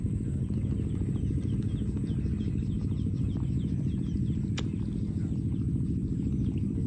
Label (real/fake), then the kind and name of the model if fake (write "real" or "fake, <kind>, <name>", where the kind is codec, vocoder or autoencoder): real